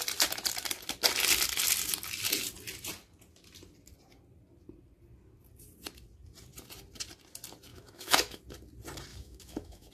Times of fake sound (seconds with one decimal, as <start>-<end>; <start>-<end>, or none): 7.7-8.4; 9.1-9.9